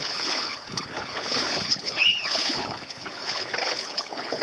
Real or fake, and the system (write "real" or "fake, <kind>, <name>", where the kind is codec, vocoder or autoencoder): fake, codec, HILCodec